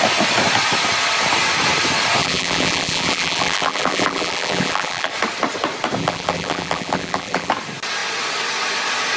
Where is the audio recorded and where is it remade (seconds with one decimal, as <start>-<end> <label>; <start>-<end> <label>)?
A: 0.0-2.2 recorded; 2.2-5.1 remade; 5.1-6.0 recorded; 6.0-7.5 remade; 7.5-9.2 recorded